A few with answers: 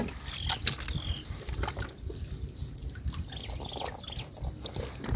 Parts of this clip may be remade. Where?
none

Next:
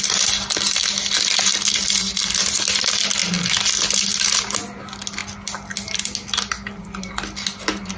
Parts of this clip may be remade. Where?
none